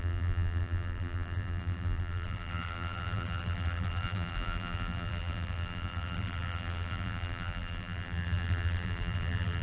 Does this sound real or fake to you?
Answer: fake